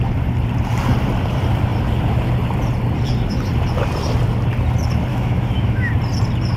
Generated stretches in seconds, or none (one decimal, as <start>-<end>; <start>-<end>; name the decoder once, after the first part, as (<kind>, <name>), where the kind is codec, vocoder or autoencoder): 5.1-5.9 (autoencoder, DAC-VAE)